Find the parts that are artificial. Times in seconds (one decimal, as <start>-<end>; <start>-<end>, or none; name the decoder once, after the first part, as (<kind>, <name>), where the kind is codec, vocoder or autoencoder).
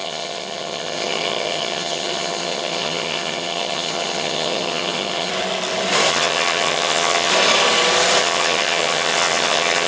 0.0-5.3 (vocoder, HiFi-GAN); 6.1-7.3; 8.2-9.9